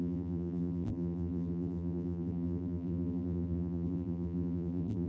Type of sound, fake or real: fake